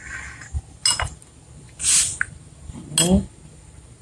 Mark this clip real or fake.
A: real